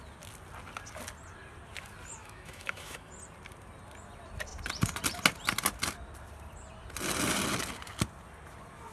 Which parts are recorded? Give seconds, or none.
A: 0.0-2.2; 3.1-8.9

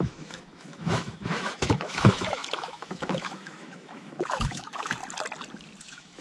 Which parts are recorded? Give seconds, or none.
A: 5.0-5.8

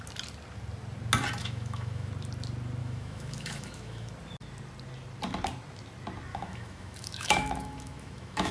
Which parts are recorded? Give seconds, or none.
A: 0.0-1.4; 2.1-2.8; 4.1-6.3

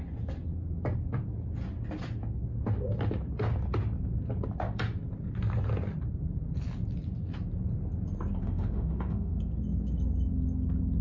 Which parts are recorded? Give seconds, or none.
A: 0.0-8.4; 9.4-11.0

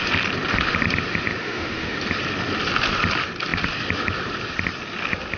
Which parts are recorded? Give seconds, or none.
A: 0.0-1.4; 2.0-5.4